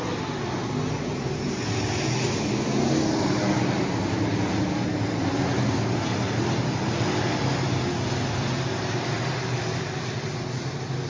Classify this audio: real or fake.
real